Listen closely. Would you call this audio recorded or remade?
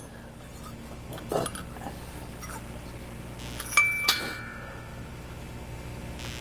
recorded